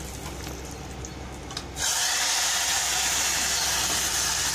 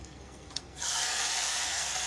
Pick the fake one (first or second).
second